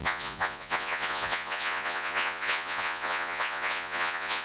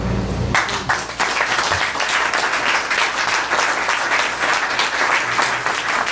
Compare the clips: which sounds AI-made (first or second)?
first